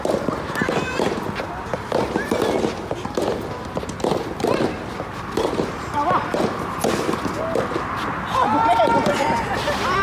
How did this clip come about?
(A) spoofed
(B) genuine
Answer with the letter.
B